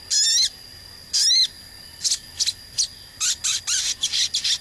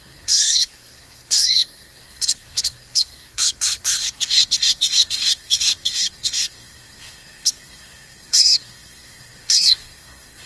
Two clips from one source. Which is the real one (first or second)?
first